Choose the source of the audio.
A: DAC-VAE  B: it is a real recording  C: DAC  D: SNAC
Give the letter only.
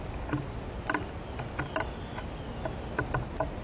B